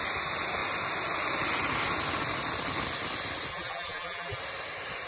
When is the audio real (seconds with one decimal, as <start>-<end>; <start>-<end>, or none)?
0.0-3.5; 4.4-5.1